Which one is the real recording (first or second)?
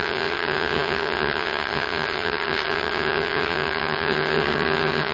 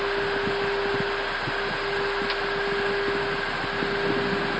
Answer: second